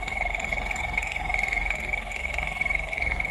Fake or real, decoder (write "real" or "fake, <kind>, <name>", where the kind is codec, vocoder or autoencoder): fake, codec, SNAC